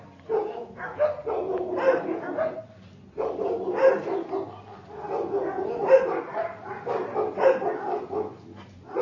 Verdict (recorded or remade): recorded